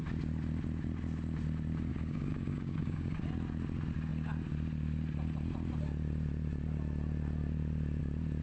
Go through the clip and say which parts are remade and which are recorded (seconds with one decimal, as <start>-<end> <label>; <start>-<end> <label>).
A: 0.0-1.9 recorded; 1.9-3.2 remade; 3.2-8.4 recorded